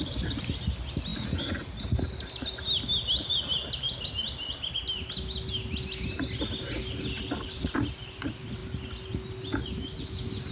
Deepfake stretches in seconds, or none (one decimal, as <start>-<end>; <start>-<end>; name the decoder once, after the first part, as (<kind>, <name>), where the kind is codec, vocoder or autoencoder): none